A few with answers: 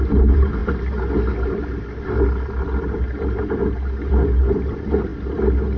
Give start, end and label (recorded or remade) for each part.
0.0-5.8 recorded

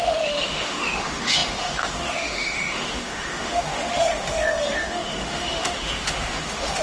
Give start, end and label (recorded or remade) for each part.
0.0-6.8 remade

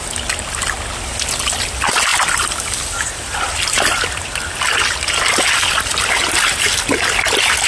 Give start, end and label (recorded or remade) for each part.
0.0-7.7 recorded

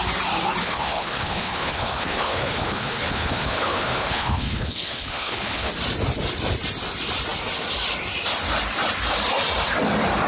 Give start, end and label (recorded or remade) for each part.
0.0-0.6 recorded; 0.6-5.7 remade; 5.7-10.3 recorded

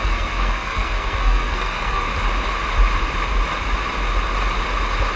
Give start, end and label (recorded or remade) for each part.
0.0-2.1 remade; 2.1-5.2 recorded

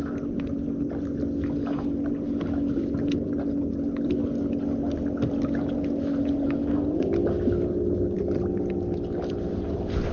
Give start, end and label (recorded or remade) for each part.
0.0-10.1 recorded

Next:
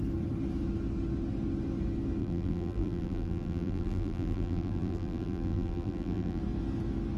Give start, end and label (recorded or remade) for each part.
0.0-2.2 recorded; 2.2-6.4 remade; 6.4-7.2 recorded

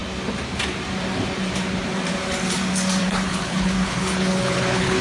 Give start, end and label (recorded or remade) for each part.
0.0-3.0 recorded; 3.0-5.0 remade